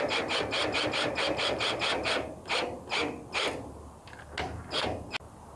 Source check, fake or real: real